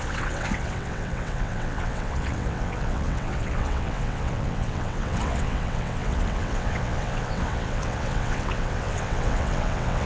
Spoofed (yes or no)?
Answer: yes